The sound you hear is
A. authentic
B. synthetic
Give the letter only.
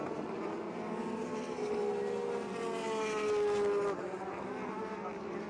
A